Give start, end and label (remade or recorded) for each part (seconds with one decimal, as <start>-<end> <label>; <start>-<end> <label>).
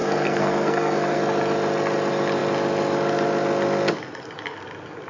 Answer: 0.0-1.2 remade; 1.2-5.1 recorded